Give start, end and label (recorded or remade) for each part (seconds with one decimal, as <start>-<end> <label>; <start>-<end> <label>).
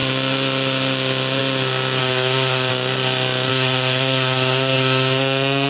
0.0-2.0 recorded; 2.0-2.7 remade; 2.7-3.5 recorded; 3.5-5.7 remade